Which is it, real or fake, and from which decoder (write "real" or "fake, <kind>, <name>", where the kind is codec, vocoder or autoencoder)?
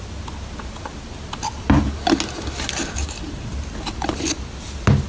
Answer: real